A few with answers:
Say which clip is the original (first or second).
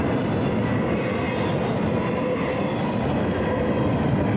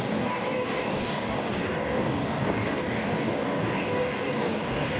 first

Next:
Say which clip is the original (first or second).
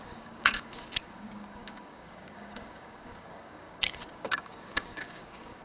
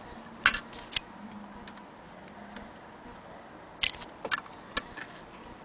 second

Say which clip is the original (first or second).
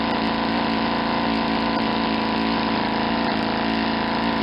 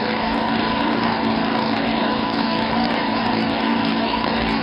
first